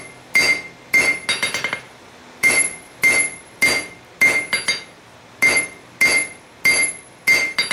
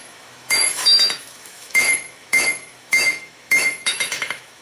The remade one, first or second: second